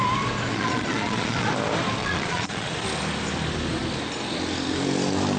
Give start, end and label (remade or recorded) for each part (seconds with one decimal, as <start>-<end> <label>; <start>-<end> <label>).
0.0-0.5 recorded; 0.5-1.5 remade; 1.5-2.0 recorded; 2.0-2.7 remade; 2.7-5.4 recorded